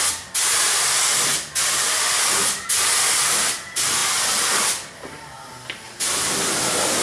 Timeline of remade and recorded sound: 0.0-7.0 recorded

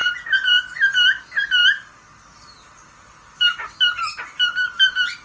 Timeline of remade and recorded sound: 0.0-0.6 remade; 0.6-5.2 recorded

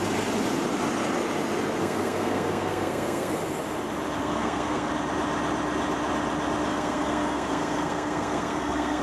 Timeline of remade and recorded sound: 0.0-1.8 recorded; 1.8-3.3 remade; 3.3-4.2 recorded; 4.2-4.9 remade; 4.9-6.7 recorded; 6.7-9.0 remade

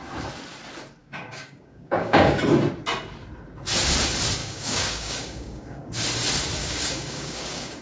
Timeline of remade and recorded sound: 0.0-1.0 recorded; 1.0-2.4 remade; 2.4-4.4 recorded; 4.4-5.9 remade; 5.9-6.6 recorded; 6.6-7.8 remade

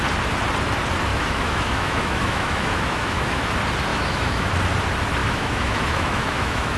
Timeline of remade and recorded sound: 0.0-1.1 recorded; 1.1-3.5 remade; 3.5-3.9 recorded; 3.9-4.5 remade; 4.5-5.2 recorded; 5.2-6.8 remade

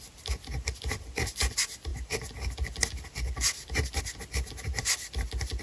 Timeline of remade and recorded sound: 0.0-5.6 recorded

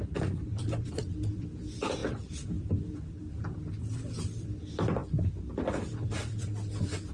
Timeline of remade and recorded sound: 0.0-5.0 remade; 5.0-5.6 recorded; 5.6-7.1 remade